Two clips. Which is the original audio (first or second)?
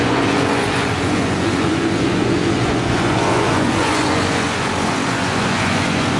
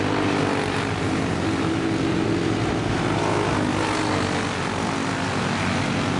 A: second